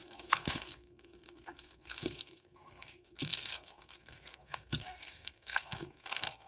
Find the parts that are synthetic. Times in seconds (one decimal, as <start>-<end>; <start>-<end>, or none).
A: 0.0-6.5